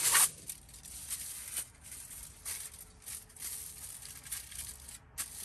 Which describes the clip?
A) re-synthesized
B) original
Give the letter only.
B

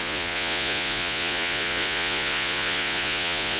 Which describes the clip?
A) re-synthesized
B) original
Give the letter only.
A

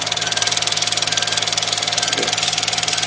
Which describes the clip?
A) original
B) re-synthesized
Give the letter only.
A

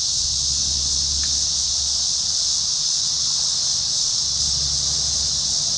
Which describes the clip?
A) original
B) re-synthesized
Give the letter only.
A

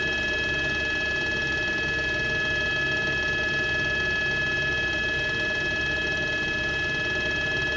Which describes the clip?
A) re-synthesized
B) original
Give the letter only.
B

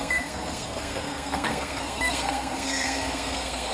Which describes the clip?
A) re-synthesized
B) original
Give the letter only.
A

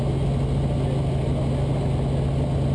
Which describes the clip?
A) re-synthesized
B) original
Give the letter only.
B